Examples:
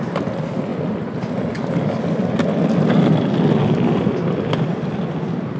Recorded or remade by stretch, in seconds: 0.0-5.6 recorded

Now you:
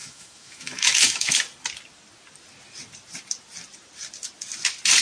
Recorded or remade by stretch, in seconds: 0.0-1.4 remade; 1.4-5.0 recorded

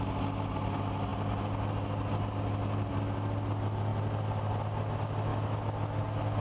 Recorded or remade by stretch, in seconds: 0.0-5.3 recorded; 5.3-6.0 remade; 6.0-6.4 recorded